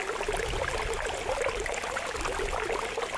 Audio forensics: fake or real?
real